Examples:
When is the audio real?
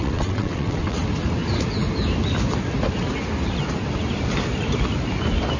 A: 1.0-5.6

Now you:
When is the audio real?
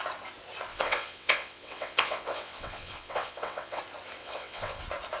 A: 0.0-0.7; 3.8-4.2; 4.8-5.2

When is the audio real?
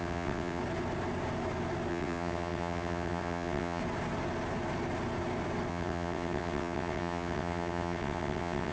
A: 0.6-1.9; 3.8-5.7